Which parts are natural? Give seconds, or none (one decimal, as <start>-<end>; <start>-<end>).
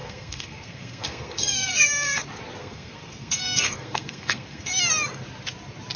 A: 2.2-2.6; 4.7-6.0